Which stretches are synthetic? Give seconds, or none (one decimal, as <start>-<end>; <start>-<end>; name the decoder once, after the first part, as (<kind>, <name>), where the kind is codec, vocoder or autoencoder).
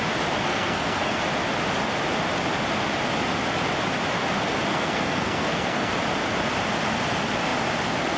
0.4-1.2 (codec, SNAC); 4.7-5.9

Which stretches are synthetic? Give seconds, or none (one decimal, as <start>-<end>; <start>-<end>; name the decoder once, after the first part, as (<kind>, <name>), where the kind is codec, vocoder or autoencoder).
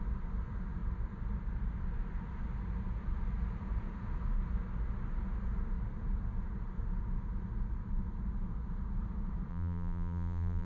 9.5-10.7 (vocoder, BigVGAN v2)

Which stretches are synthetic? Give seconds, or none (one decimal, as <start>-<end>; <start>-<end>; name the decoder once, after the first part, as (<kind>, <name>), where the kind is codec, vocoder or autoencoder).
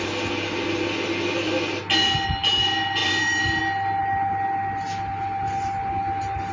3.0-3.6 (vocoder, BigVGAN v2)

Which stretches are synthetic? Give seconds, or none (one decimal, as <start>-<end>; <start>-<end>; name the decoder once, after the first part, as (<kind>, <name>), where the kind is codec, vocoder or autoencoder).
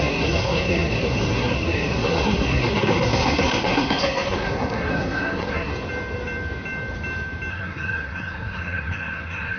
0.0-5.7 (codec, SNAC); 7.5-9.6